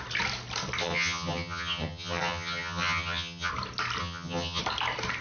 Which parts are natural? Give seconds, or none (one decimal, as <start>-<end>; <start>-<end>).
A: 0.0-0.8; 3.5-4.0; 4.6-5.2